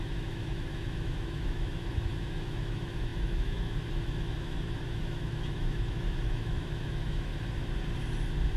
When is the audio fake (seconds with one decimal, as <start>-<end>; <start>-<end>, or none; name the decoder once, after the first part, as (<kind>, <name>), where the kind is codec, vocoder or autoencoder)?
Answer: 0.0-7.3 (autoencoder, DAC-VAE)